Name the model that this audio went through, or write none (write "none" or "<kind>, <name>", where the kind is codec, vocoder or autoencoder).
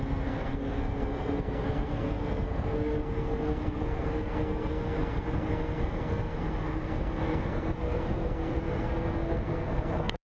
codec, SNAC